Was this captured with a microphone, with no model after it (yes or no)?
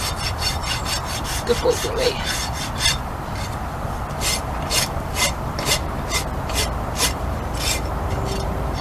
no